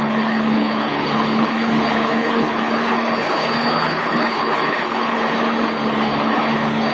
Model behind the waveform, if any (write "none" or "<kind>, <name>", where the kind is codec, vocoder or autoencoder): codec, HILCodec